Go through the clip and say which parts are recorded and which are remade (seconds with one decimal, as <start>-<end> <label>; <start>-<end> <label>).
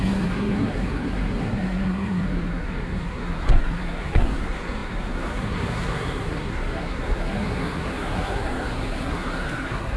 0.0-10.0 remade